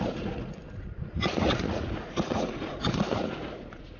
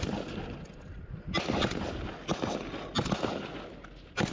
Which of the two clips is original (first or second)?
second